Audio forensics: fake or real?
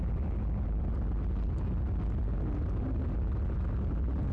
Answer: real